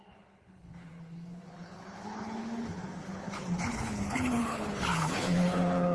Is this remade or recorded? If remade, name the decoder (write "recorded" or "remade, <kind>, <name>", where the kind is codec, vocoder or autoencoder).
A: remade, codec, HILCodec